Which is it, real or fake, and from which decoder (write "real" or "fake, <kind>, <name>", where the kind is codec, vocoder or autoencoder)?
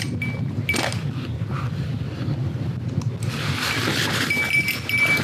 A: real